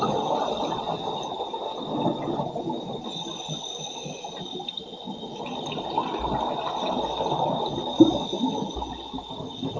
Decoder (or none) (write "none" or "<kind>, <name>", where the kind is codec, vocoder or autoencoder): none